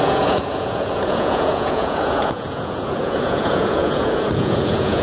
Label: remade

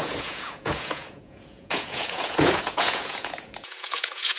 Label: remade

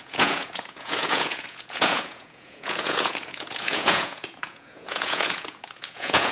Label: remade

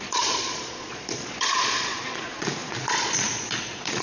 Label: remade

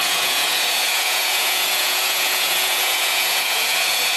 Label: remade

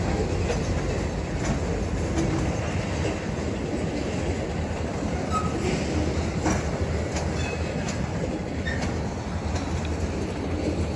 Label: recorded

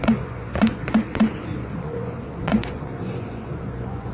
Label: remade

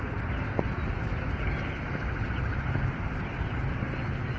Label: recorded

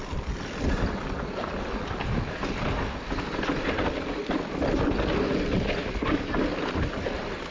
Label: recorded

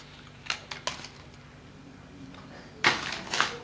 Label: recorded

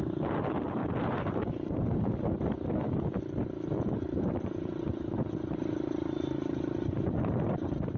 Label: recorded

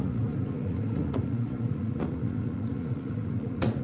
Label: remade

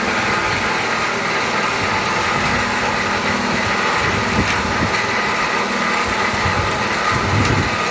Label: recorded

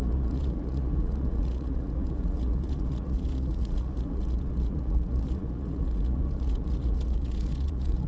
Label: remade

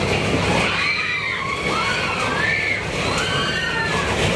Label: recorded